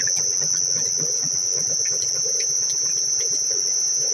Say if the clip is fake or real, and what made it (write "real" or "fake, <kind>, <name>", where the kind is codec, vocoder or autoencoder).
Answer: real